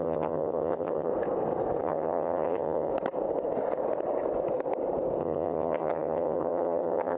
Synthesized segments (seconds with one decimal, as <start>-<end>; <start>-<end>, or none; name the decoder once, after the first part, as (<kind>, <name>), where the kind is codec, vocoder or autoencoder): 0.0-1.1 (vocoder, HiFi-GAN); 1.8-2.9; 5.2-7.2